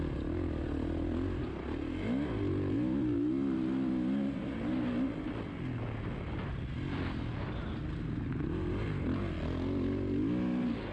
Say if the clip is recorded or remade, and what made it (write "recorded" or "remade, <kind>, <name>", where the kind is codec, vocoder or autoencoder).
recorded